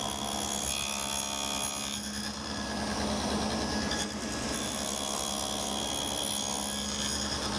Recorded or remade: recorded